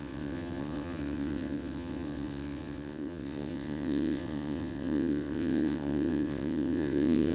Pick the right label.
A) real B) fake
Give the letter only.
B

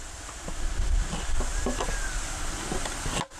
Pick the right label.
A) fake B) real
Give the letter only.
B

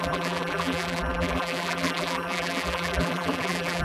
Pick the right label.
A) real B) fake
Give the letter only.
B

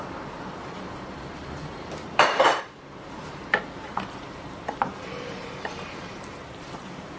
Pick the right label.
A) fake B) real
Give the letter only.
A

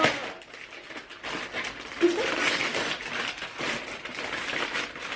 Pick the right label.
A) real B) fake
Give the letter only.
A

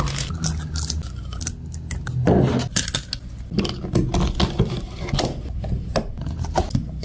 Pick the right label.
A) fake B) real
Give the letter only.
B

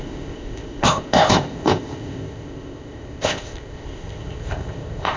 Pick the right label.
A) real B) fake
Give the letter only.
B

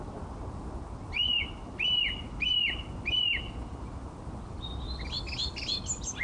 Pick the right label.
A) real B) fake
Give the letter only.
A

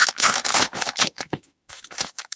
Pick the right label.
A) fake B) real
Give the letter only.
A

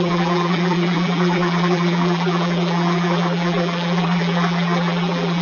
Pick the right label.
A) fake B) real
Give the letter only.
A